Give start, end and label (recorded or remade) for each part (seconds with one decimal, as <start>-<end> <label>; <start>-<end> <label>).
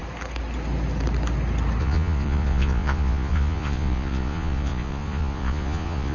0.0-1.8 recorded; 1.8-6.1 remade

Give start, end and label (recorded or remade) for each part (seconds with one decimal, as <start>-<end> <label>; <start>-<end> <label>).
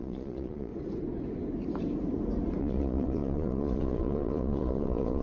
0.0-0.7 remade; 0.7-2.6 recorded; 2.6-5.2 remade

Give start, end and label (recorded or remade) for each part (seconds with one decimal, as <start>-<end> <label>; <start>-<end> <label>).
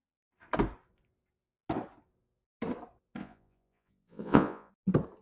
0.0-3.2 recorded; 3.2-4.7 remade; 4.7-5.2 recorded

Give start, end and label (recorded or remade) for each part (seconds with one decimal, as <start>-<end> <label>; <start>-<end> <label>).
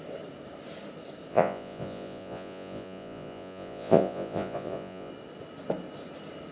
0.0-1.3 recorded; 1.3-5.1 remade; 5.1-6.5 recorded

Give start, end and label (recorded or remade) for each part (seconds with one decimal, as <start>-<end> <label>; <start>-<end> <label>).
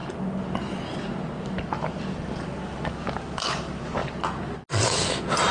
0.0-5.5 recorded